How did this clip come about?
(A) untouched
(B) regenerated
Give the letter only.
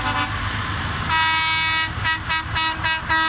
A